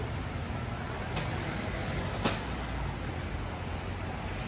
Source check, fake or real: real